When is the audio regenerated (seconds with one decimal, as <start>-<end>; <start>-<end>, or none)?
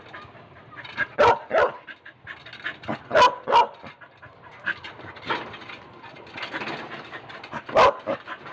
none